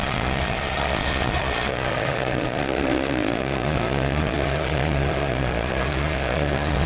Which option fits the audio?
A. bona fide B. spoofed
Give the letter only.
B